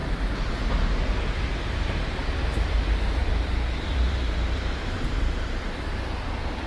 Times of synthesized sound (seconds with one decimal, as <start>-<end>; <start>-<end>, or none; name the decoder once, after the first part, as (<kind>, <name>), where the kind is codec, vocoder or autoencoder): 0.0-2.2 (vocoder, BigVGAN v2); 3.2-6.0